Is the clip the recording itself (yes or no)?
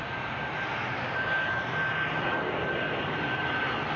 yes